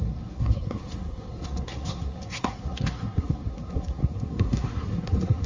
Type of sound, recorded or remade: remade